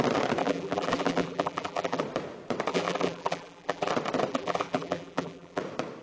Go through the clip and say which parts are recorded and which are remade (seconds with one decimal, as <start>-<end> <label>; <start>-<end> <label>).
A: 0.0-0.4 recorded; 0.4-2.0 remade; 2.0-2.7 recorded; 2.7-3.9 remade; 3.9-4.3 recorded; 4.3-5.6 remade; 5.6-6.0 recorded